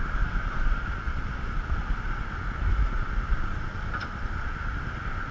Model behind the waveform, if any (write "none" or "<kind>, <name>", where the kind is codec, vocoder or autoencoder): none